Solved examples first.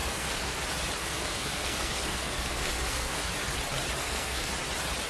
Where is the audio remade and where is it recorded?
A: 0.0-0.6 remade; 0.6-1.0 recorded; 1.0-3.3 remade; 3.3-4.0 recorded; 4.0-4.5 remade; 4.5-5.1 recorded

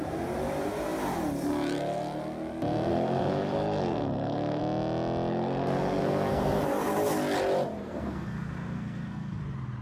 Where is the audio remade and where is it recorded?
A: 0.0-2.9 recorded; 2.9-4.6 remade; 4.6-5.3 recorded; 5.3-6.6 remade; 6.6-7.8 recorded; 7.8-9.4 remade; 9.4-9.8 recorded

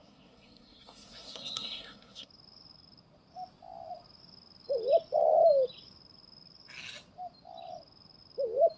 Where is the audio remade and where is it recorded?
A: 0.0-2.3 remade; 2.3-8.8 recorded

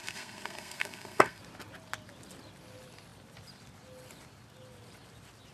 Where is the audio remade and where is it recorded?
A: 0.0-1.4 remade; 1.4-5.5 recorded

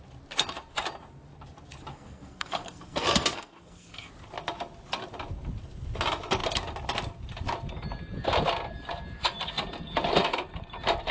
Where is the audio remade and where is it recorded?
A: 0.0-1.9 recorded; 1.9-4.1 remade; 4.1-11.1 recorded

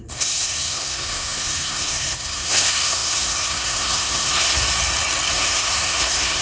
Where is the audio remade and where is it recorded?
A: 0.0-4.6 remade; 4.6-5.3 recorded; 5.3-6.4 remade